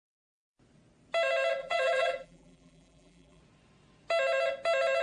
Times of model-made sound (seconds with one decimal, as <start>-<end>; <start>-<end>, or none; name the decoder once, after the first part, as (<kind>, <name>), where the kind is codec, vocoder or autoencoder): 1.6-3.4 (vocoder, BigVGAN v2)